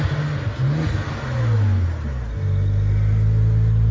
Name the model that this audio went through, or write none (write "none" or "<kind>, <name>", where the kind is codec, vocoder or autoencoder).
none